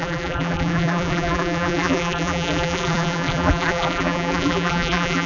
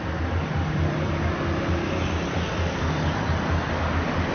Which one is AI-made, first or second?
first